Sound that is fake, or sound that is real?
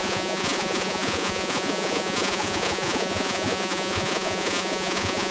fake